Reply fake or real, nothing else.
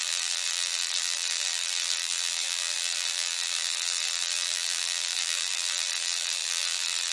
fake